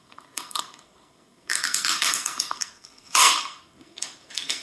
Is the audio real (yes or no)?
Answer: no